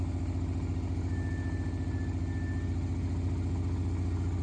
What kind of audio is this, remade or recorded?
recorded